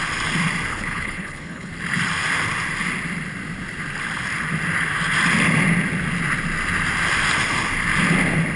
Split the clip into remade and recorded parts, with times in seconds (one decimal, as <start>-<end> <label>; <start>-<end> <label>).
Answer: 0.0-0.7 recorded; 0.7-1.7 remade; 1.7-8.6 recorded